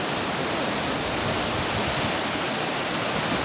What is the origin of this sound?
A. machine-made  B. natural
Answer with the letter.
B